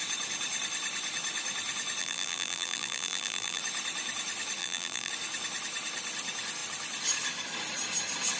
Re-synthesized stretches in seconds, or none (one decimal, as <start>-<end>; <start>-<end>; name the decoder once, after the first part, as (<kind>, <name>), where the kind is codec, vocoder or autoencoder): 2.0-3.6 (vocoder, BigVGAN v2); 4.6-5.1